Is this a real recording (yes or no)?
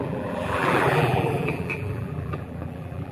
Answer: no